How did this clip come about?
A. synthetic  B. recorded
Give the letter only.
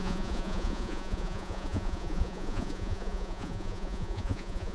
A